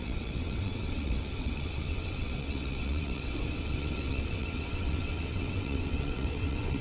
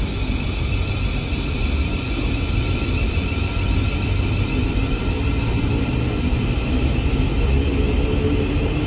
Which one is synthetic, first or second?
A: first